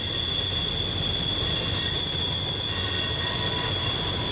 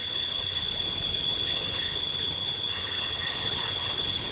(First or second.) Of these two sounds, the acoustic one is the first